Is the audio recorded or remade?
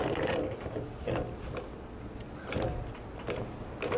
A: recorded